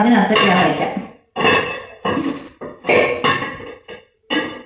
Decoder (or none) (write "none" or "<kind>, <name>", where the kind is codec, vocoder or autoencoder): none